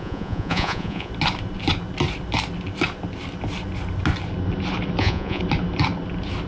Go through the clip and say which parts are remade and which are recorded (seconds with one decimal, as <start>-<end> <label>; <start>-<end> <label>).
0.0-1.1 remade; 1.1-5.0 recorded; 5.0-5.4 remade; 5.4-6.5 recorded